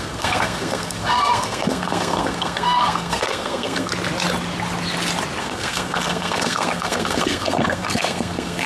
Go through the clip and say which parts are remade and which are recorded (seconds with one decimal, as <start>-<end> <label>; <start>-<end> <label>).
0.0-3.9 remade; 3.9-5.4 recorded; 5.4-8.7 remade